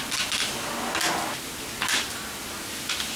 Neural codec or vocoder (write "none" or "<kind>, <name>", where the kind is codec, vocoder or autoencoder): none